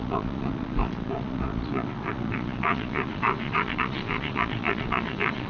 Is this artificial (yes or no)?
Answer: yes